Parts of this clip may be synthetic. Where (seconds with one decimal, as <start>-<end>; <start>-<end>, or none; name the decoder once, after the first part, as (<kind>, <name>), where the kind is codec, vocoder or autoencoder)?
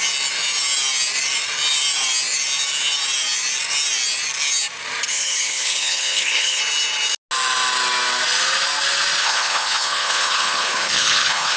5.1-6.6 (codec, HILCodec); 9.2-11.6